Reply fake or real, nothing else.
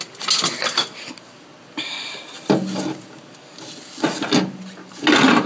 real